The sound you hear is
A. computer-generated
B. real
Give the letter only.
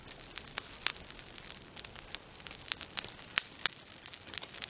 B